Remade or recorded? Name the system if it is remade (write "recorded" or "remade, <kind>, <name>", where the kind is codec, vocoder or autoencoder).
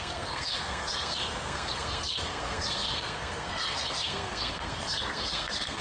remade, codec, SNAC